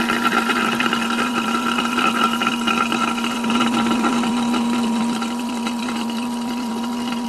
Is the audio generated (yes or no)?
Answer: yes